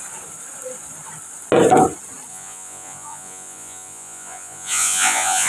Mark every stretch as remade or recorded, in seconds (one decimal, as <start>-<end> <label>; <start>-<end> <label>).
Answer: 0.0-2.3 recorded; 2.3-5.5 remade